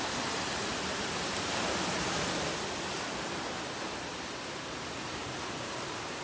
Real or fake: real